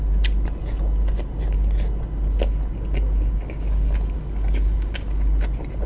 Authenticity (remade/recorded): recorded